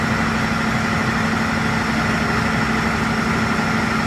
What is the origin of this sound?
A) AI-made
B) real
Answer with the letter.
B